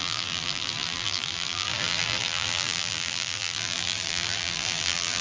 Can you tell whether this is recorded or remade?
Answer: remade